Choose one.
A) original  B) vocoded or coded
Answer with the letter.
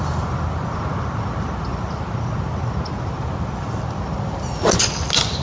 A